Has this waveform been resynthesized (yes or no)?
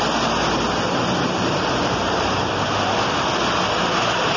yes